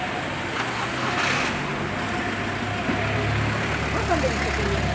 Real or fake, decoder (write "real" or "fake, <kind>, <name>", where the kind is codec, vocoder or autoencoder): real